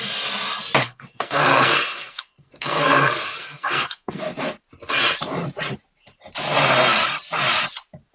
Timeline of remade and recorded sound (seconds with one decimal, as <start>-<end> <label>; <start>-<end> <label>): 0.0-0.8 recorded; 0.8-4.2 remade; 4.2-8.1 recorded